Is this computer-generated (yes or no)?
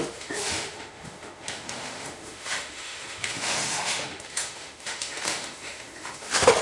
yes